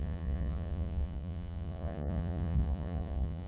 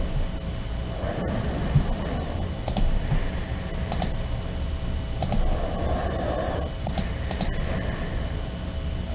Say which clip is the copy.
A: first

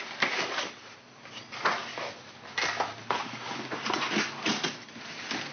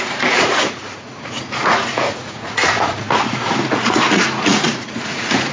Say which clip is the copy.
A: second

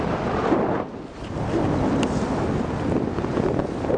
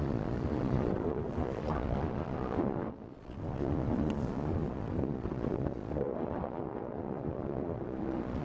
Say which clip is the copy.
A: second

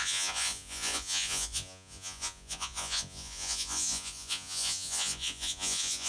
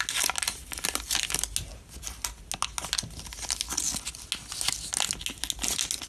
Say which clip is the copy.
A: first